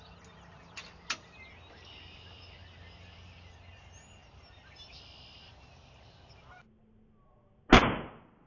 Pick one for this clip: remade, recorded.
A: recorded